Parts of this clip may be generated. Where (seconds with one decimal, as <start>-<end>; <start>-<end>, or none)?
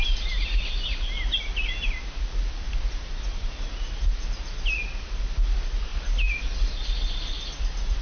none